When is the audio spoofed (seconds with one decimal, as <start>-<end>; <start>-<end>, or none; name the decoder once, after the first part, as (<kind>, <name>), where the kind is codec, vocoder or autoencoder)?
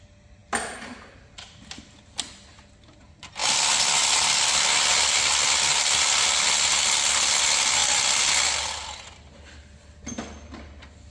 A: none